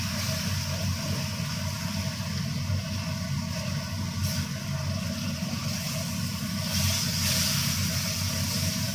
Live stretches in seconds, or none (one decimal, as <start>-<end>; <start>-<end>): 0.0-8.9